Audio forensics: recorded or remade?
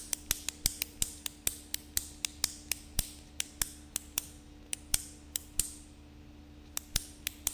recorded